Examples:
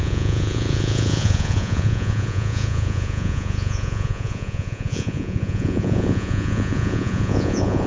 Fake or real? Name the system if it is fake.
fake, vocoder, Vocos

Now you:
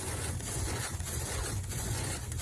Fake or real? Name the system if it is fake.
fake, vocoder, Vocos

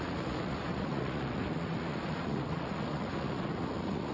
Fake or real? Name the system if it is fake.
fake, vocoder, Vocos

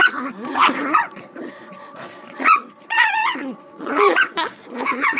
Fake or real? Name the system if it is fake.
fake, vocoder, Vocos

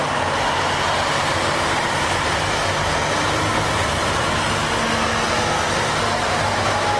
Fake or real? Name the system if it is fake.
real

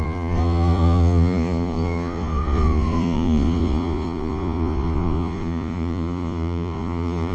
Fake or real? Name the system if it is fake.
fake, vocoder, Vocos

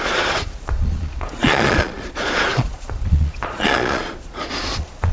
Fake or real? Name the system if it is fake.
fake, vocoder, Vocos